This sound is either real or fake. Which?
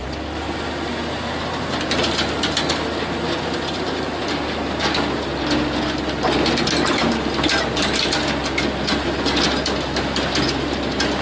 real